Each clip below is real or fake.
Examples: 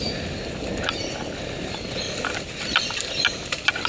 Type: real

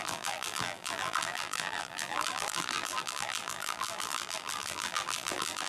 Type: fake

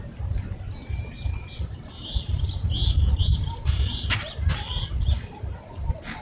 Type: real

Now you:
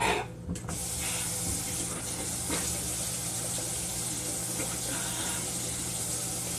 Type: real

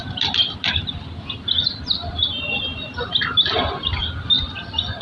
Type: real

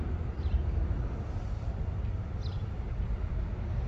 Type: fake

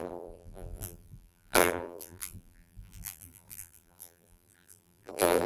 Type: fake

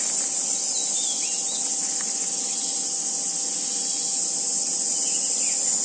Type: real